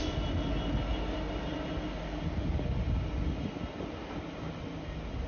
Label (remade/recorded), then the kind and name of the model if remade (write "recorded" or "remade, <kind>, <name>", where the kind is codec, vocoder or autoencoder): recorded